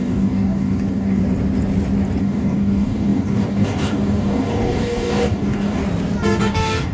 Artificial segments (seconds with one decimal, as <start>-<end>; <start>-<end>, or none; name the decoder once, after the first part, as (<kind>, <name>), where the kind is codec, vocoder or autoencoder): 0.0-1.2 (codec, DAC); 2.2-5.8; 6.4-6.9